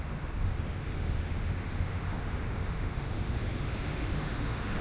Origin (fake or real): fake